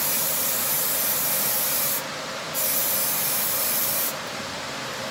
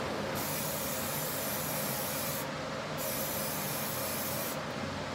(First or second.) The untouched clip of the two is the second